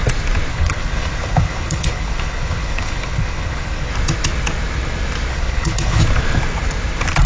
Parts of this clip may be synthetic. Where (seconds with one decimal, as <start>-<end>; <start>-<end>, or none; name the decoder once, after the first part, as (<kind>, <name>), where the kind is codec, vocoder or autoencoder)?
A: 0.5-3.9 (codec, HILCodec); 5.3-6.0